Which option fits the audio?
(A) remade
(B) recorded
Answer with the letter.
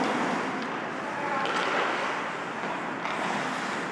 B